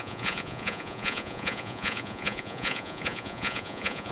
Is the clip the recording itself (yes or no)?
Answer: no